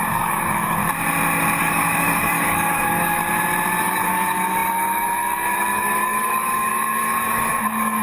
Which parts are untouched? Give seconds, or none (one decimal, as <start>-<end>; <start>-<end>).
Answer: 0.8-1.6; 3.2-3.8